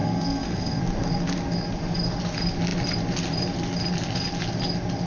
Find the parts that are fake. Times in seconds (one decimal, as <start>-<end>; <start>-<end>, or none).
0.0-0.8